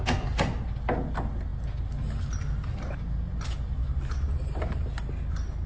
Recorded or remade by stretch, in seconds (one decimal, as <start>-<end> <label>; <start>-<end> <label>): 0.0-5.7 recorded